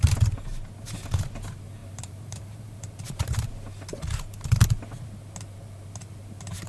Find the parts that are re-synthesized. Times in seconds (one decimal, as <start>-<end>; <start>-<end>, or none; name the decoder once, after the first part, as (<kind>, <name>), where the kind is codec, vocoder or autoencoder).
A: 1.8-2.8 (vocoder, BigVGAN v2)